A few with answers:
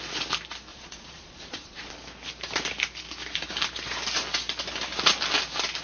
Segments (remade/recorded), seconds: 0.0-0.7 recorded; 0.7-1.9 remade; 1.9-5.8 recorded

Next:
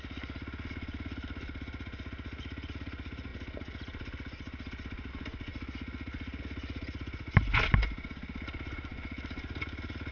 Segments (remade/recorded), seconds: 0.0-10.1 recorded

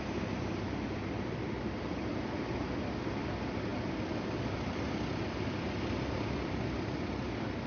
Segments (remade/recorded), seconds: 0.0-7.7 recorded

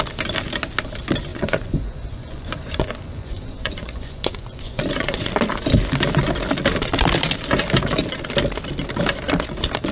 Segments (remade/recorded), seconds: 0.0-1.3 recorded; 1.3-5.3 remade; 5.3-9.9 recorded